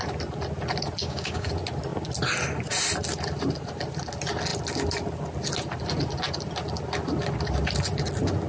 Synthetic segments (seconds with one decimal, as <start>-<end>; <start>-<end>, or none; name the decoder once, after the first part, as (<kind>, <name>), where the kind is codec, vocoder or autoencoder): 1.0-1.5 (codec, DAC)

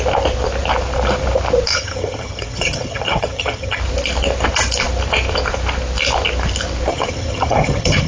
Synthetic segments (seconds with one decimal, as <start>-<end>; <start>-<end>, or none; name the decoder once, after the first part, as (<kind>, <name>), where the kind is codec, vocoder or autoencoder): 1.7-3.8 (vocoder, HiFi-GAN); 6.9-8.1

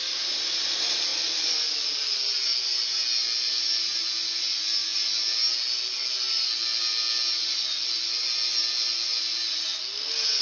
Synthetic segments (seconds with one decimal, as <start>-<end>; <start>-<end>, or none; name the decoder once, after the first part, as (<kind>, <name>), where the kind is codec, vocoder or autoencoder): none

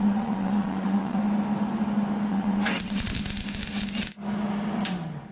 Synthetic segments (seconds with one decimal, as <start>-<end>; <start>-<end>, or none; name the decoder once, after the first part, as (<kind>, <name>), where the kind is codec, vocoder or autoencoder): 0.0-1.2 (vocoder, WaveNeXt); 2.3-3.1

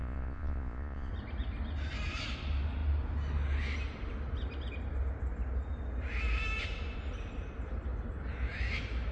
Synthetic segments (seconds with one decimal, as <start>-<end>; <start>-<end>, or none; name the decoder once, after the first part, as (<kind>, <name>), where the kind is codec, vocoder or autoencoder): 0.0-1.1 (vocoder, Vocos)